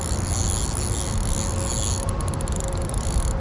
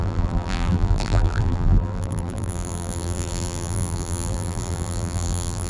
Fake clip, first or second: second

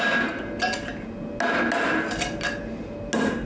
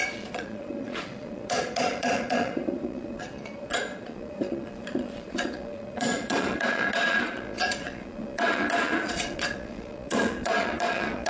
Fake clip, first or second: second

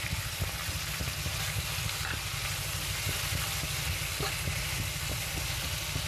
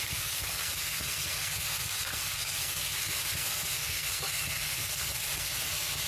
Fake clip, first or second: second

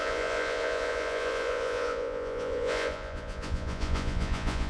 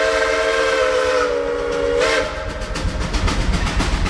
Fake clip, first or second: first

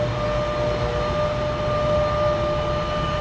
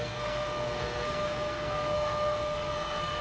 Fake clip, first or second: second